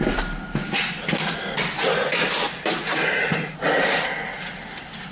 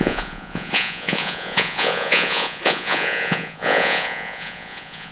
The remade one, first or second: second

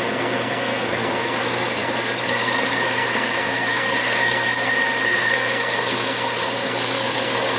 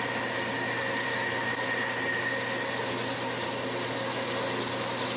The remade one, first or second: first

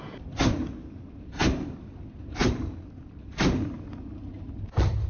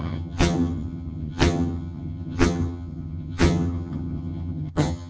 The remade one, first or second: second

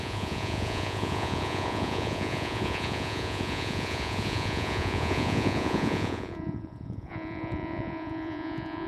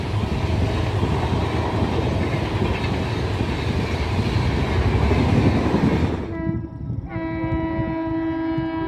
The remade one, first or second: first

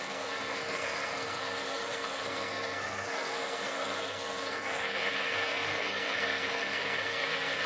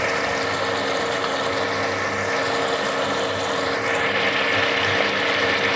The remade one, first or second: first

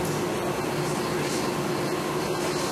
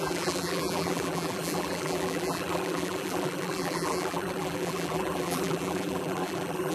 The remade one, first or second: second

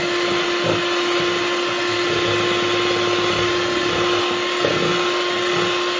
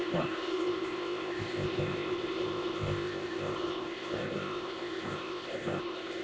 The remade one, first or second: second